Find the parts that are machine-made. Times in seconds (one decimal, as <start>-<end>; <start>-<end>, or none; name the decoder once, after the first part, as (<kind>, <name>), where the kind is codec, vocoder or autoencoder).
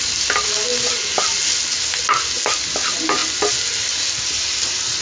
none